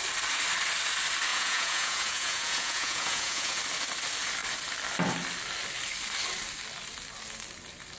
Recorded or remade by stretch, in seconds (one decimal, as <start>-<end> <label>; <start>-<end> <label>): 0.0-1.3 recorded; 1.3-3.6 remade; 3.6-8.0 recorded